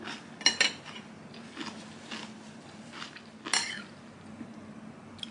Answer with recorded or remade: recorded